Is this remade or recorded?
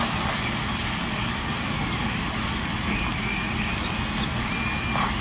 recorded